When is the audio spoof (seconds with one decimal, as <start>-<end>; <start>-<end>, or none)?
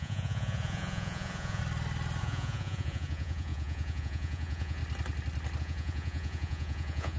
0.0-1.6; 2.2-4.8; 5.6-7.2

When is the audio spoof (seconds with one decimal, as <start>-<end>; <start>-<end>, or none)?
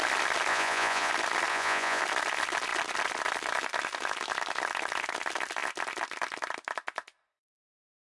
0.5-1.1; 1.5-2.0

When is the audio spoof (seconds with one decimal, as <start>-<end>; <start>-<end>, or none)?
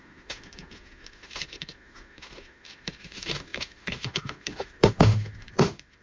0.0-6.0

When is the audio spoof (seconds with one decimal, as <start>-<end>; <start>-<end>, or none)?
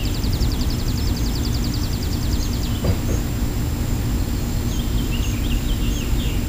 0.0-0.8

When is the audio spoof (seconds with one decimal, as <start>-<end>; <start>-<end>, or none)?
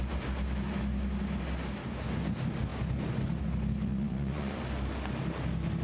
3.9-4.6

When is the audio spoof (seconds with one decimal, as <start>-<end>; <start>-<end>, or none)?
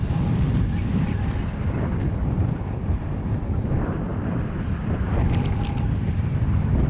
2.2-3.1; 4.1-6.9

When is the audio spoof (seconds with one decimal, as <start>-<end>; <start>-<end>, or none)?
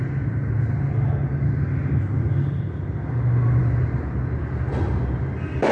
none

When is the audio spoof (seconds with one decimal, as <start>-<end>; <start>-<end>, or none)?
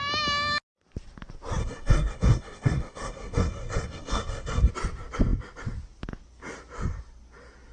1.6-4.7